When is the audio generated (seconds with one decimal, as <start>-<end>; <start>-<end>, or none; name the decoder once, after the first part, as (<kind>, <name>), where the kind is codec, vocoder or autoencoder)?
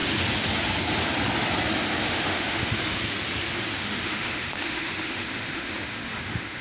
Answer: 2.1-2.7 (autoencoder, DAC-VAE); 3.8-6.6